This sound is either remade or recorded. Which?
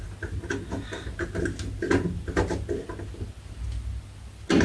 recorded